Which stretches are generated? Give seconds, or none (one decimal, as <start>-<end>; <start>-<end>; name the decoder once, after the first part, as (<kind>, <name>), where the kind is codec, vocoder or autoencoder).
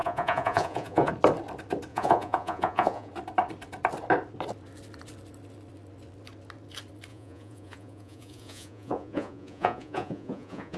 0.0-1.1 (vocoder, Vocos); 1.9-3.1; 7.1-10.8